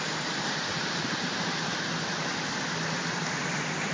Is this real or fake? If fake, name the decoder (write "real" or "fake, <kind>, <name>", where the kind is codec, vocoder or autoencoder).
real